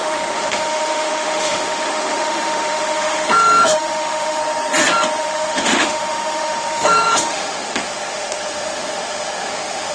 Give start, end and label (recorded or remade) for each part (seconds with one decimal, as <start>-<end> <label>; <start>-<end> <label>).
0.0-4.4 remade; 4.4-5.2 recorded; 5.2-9.9 remade